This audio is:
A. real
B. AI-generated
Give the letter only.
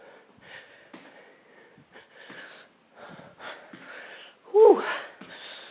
A